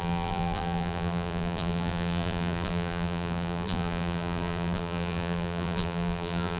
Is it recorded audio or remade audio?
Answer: remade